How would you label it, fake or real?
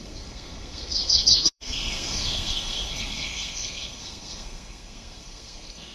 fake